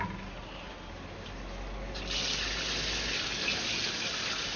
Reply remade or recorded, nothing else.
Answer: recorded